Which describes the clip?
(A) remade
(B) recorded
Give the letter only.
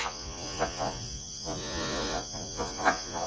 A